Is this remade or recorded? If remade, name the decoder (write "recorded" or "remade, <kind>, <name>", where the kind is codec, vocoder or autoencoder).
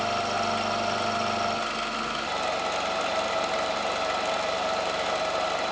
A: recorded